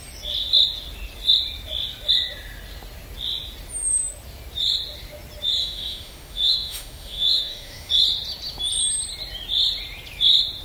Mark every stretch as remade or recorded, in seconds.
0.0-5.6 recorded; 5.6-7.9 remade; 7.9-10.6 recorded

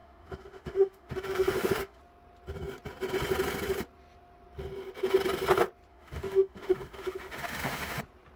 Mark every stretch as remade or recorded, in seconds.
0.0-2.0 remade; 2.0-5.9 recorded; 5.9-8.0 remade; 8.0-8.4 recorded